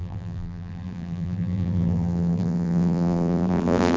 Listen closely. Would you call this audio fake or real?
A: fake